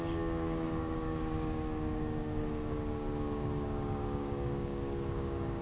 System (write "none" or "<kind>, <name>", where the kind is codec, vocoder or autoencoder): codec, DAC